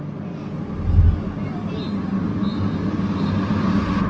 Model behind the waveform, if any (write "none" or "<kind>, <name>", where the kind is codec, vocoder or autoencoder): none